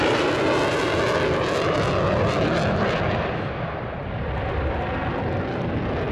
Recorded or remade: recorded